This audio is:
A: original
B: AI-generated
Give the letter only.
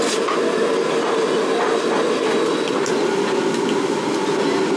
A